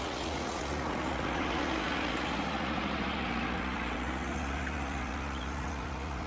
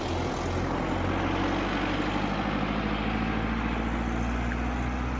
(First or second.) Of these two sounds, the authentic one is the second